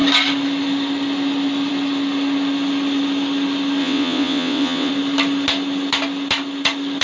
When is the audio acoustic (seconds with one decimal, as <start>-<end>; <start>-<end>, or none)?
0.0-3.8; 4.9-7.0